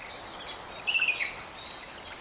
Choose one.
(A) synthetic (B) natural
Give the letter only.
B